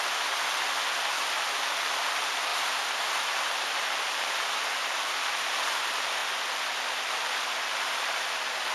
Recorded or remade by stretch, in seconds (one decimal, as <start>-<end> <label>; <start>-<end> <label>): 0.0-6.2 remade; 6.2-6.7 recorded; 6.7-8.7 remade